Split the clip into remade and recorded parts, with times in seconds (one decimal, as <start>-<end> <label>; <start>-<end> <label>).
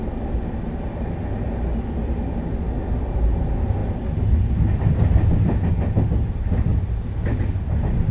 0.0-8.1 recorded